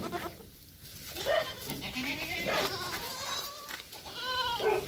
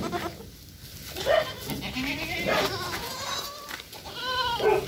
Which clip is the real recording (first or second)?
second